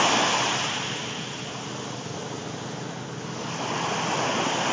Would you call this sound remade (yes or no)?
no